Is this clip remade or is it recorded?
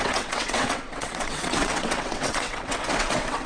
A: remade